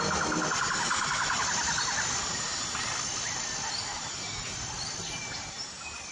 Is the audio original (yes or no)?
yes